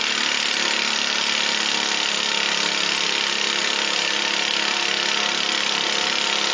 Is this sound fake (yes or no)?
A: no